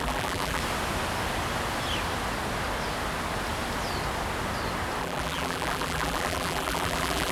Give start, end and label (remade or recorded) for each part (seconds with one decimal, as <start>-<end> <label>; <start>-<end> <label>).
0.0-0.6 remade; 0.6-5.0 recorded; 5.0-7.3 remade